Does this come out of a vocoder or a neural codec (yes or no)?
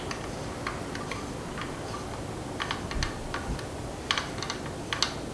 no